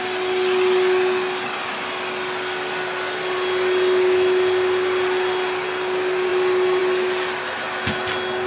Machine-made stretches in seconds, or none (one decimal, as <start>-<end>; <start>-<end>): none